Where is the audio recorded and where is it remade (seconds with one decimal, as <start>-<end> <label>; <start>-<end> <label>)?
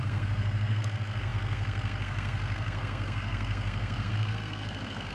0.0-5.1 remade